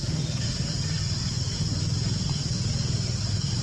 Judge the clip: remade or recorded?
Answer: recorded